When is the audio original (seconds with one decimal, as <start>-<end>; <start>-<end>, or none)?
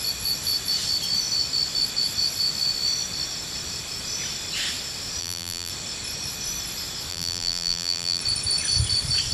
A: 0.0-5.2; 5.7-7.1; 8.2-9.3